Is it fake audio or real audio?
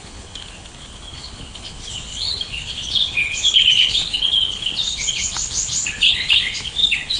fake